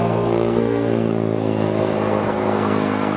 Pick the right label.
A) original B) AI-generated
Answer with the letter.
B